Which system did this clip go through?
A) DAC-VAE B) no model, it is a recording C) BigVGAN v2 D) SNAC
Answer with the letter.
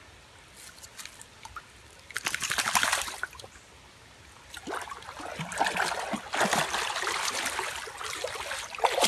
B